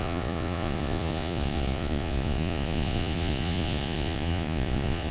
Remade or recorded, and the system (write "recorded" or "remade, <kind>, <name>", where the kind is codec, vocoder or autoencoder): remade, vocoder, Vocos